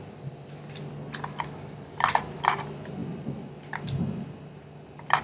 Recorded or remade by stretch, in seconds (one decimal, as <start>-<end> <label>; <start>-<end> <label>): 0.0-5.2 recorded